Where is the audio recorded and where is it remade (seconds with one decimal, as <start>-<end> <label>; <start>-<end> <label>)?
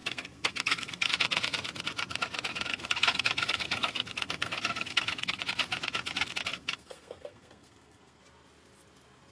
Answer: 0.0-1.1 remade; 1.1-2.7 recorded; 2.7-5.4 remade; 5.4-6.5 recorded; 6.5-8.2 remade; 8.2-9.3 recorded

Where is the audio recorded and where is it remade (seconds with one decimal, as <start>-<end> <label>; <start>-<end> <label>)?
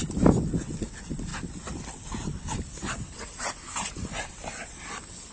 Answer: 0.0-5.3 recorded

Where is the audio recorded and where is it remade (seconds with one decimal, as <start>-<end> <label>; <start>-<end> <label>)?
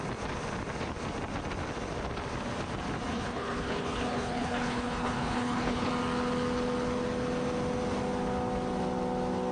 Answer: 0.0-3.1 recorded; 3.1-5.9 remade; 5.9-9.5 recorded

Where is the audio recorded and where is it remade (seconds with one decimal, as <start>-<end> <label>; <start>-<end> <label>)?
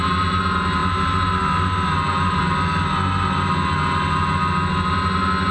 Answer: 0.0-5.5 recorded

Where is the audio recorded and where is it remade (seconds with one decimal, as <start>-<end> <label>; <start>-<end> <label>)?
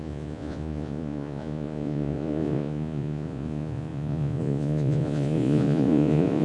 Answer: 0.0-6.4 remade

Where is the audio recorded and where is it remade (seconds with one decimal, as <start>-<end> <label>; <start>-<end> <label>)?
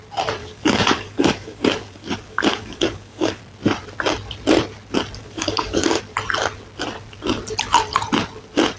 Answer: 0.0-0.4 recorded; 0.4-3.4 remade; 3.4-5.2 recorded; 5.2-6.0 remade; 6.0-8.8 recorded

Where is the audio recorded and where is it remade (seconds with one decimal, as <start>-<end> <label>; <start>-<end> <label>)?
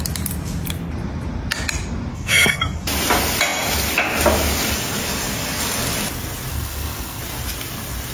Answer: 0.0-2.1 recorded; 2.1-2.6 remade; 2.6-6.5 recorded; 6.5-7.2 remade; 7.2-8.1 recorded